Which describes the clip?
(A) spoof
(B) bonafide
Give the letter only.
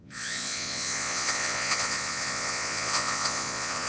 A